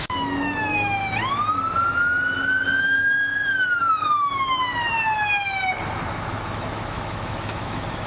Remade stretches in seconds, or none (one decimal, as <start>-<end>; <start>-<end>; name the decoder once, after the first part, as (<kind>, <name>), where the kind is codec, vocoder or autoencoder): 0.0-1.0 (autoencoder, DAC-VAE); 2.8-3.2; 3.9-4.6; 6.3-8.1

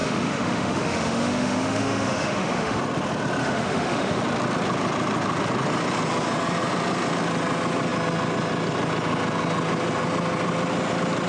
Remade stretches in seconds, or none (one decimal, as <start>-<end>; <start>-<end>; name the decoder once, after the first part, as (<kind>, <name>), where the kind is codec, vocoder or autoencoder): 0.0-2.8 (autoencoder, DAC-VAE); 3.4-4.2

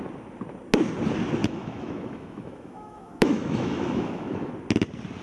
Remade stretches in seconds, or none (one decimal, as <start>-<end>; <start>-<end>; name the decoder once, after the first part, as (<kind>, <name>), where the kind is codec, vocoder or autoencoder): 1.4-4.5 (autoencoder, DAC-VAE)